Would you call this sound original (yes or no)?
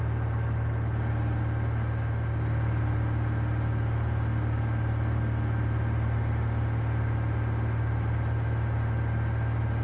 yes